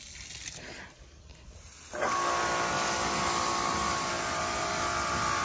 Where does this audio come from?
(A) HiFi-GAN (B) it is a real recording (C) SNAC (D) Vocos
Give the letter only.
B